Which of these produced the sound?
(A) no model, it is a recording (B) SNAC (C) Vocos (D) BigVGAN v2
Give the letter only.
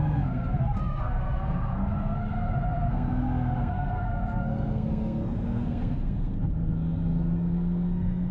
B